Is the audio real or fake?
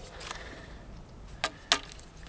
real